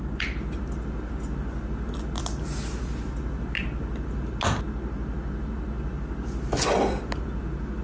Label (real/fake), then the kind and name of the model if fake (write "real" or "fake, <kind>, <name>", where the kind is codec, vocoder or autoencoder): real